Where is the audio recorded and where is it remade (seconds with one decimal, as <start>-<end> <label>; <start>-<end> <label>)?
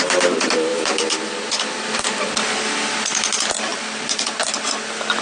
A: 0.0-0.7 recorded; 0.7-2.0 remade; 2.0-3.7 recorded; 3.7-4.4 remade; 4.4-5.2 recorded